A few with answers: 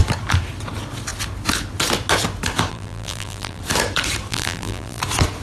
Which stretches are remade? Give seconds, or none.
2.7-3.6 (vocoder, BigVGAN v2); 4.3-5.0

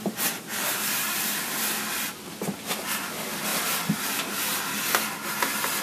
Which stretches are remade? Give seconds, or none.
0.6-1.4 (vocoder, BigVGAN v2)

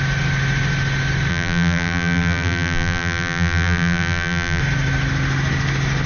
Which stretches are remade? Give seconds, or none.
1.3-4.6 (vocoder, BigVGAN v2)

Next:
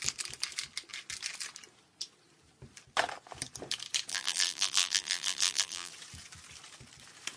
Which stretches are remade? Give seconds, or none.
4.1-5.9 (vocoder, BigVGAN v2)

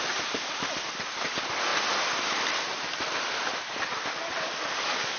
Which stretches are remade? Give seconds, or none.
1.7-4.8 (vocoder, BigVGAN v2)

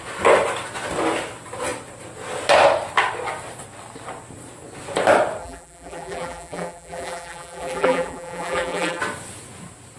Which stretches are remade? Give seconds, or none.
5.4-9.0 (vocoder, BigVGAN v2)

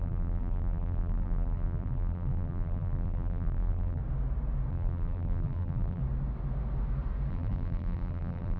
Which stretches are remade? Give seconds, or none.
0.0-4.0 (vocoder, BigVGAN v2); 4.7-6.0; 7.3-8.6

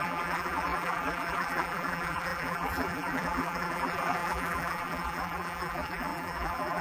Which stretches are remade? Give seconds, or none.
0.0-6.8 (vocoder, BigVGAN v2)